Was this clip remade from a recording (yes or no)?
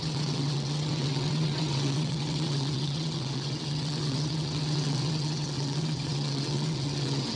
yes